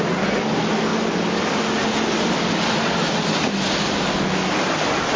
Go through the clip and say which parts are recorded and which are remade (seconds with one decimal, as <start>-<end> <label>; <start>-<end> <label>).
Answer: 0.0-5.2 recorded